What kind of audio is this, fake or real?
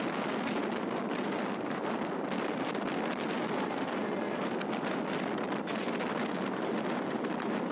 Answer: real